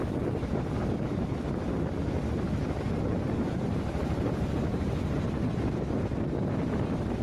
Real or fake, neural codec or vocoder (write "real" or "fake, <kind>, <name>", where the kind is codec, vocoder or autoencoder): fake, vocoder, BigVGAN v2